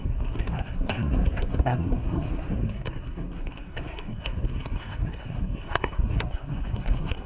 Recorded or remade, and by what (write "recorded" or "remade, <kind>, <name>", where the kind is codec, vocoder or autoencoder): remade, codec, SNAC